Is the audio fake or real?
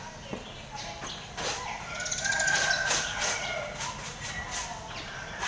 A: real